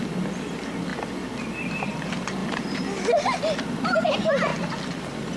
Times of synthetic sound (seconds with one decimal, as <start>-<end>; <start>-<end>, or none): none